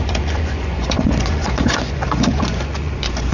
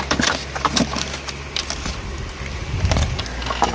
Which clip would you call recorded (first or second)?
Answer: second